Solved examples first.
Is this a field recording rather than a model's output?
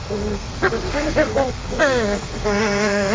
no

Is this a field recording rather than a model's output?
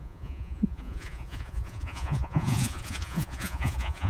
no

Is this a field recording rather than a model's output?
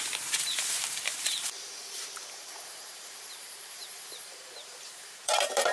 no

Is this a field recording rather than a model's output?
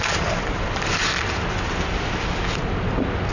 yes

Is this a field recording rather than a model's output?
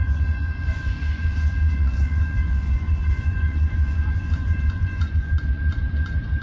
no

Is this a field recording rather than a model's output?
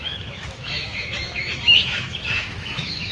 no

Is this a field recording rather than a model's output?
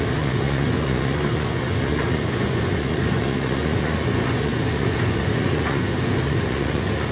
no